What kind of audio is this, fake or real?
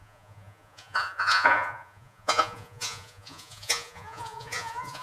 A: fake